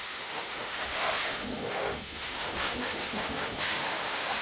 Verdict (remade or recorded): remade